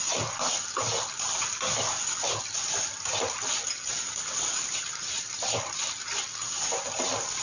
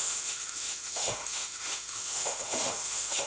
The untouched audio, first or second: first